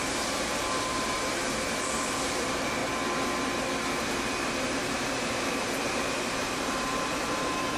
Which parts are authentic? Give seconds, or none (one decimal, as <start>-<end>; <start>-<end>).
2.8-4.4